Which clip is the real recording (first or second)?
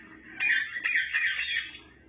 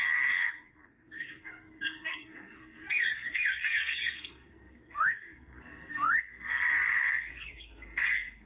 first